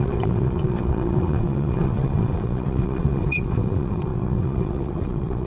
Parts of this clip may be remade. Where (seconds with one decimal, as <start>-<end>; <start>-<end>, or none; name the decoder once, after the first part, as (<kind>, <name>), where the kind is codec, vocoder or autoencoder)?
0.0-5.5 (vocoder, WaveNeXt)